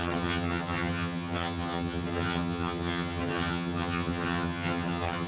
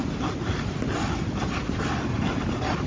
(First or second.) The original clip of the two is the second